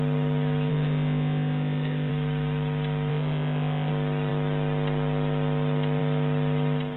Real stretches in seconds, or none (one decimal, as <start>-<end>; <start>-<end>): 0.0-0.7; 2.1-3.1; 3.9-7.0